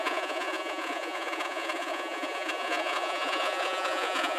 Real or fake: fake